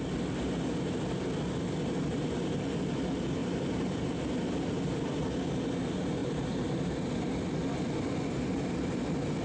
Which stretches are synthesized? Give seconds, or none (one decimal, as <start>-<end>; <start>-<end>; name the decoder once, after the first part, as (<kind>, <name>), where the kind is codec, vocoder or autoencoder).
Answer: 3.4-4.2 (vocoder, BigVGAN v2); 6.2-6.9